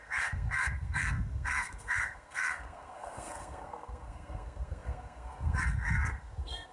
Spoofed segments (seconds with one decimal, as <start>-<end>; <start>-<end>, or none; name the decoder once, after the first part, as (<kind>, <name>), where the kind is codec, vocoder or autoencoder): 0.0-6.7 (codec, SNAC)